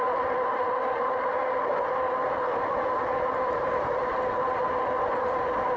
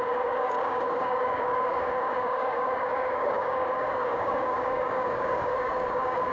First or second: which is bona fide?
first